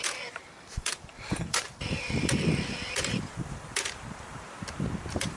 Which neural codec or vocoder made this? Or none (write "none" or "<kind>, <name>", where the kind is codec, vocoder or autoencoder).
vocoder, BigVGAN v2